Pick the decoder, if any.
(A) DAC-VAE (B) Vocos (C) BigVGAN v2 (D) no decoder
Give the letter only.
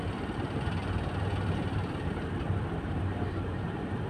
C